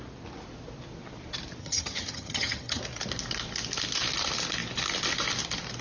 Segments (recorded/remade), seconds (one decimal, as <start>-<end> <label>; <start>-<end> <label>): 0.0-1.6 recorded; 1.6-2.8 remade; 2.8-5.8 recorded